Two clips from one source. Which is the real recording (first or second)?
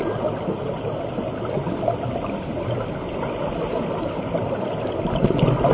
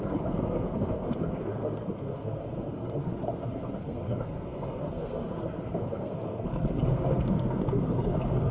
first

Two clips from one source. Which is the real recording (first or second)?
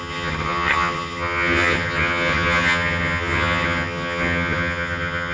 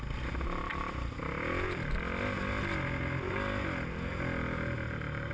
second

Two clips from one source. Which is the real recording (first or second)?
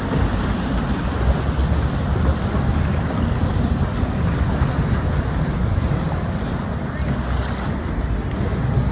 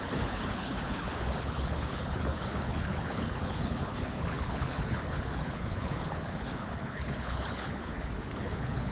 first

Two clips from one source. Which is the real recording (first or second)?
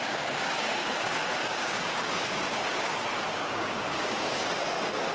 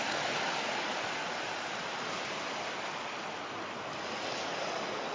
second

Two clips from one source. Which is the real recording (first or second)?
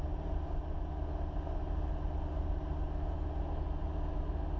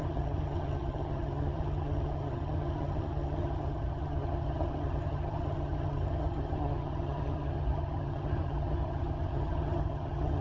first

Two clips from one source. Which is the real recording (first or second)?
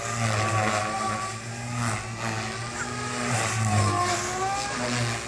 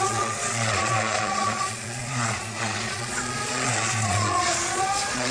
first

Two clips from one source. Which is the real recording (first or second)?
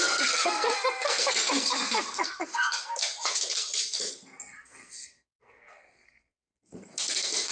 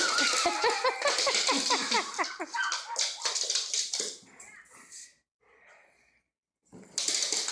second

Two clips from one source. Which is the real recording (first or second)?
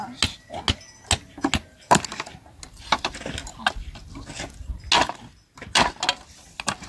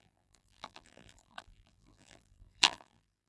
first